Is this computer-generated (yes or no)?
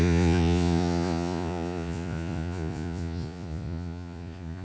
yes